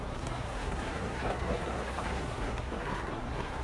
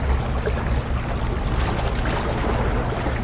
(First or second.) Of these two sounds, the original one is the second